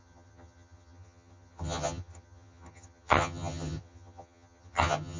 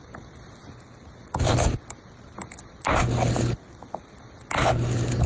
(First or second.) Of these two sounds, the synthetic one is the first